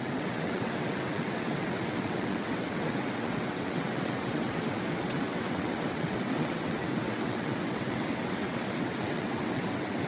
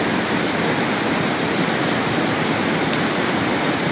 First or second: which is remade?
first